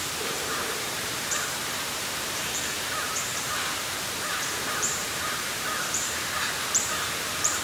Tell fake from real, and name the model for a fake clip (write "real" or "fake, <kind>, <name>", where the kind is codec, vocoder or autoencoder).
fake, vocoder, BigVGAN v2